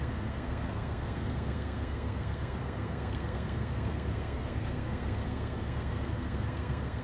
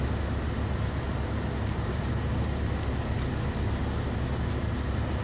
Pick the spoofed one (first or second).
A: first